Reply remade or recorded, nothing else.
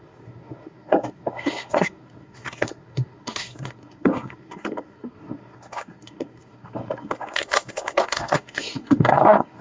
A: remade